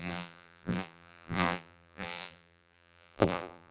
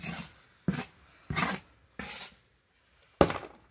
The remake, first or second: first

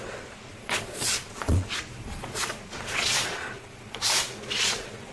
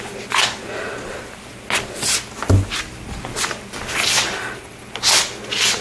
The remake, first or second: first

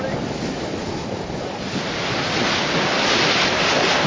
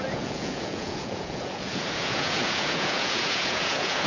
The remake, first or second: second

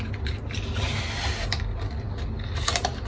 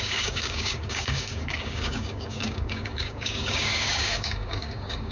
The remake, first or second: second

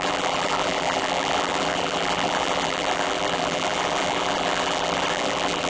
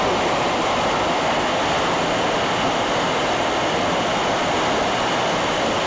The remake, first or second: first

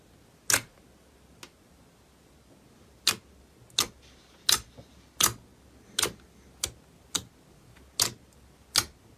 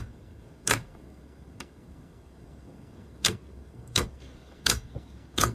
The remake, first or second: second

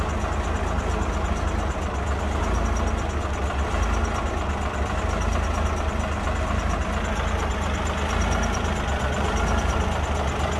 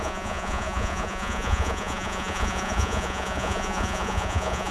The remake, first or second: second